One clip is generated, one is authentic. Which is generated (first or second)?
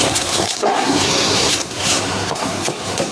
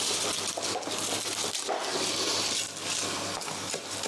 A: first